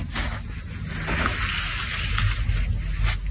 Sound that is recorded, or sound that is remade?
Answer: recorded